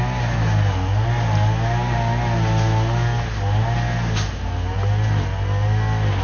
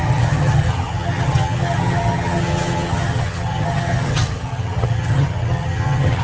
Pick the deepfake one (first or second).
second